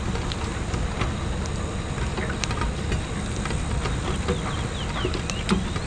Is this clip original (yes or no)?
yes